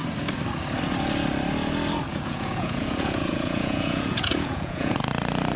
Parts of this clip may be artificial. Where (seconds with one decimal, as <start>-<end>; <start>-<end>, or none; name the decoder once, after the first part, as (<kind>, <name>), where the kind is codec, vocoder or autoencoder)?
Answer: 2.1-5.1 (vocoder, Vocos)